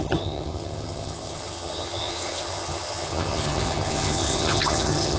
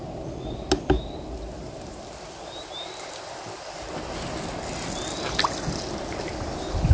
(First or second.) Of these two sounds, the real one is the second